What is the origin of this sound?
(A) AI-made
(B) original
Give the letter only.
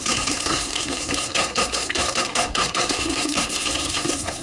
A